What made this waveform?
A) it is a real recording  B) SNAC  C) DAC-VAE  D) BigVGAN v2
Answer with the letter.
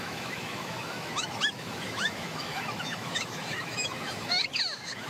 C